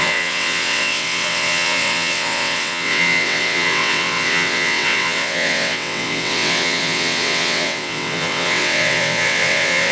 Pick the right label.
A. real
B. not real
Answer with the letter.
B